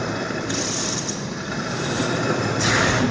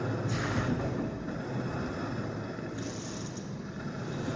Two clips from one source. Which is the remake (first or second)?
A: first